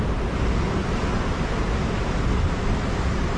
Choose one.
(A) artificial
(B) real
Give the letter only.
B